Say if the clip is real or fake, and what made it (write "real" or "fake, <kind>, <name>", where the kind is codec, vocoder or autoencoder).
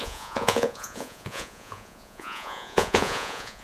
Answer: fake, vocoder, Vocos